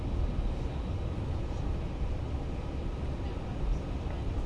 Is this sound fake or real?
real